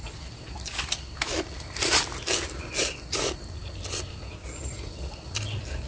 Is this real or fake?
real